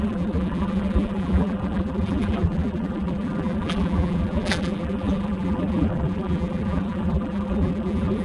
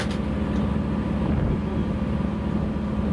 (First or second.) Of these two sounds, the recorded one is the second